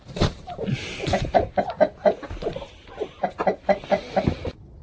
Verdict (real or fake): real